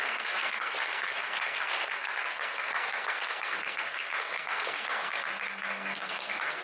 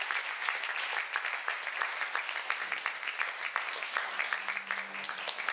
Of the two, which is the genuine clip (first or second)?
second